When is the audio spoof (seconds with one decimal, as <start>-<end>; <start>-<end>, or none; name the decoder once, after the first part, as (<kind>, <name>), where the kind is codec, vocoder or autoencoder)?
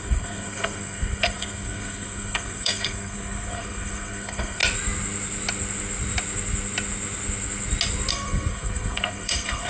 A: 0.0-4.6 (codec, SNAC); 8.1-9.7